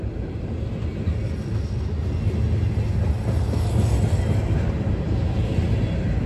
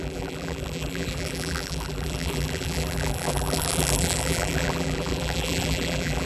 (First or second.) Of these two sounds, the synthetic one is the second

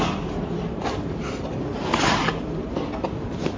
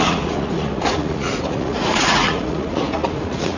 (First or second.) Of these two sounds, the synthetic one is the second